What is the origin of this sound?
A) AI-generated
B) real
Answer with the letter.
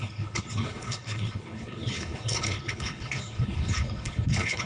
A